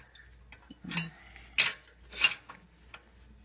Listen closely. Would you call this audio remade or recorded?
recorded